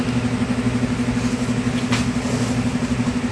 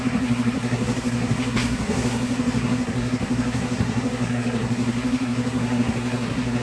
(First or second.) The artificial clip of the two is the second